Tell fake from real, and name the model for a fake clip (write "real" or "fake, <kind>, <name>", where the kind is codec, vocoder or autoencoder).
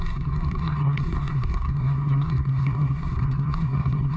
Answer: fake, codec, SNAC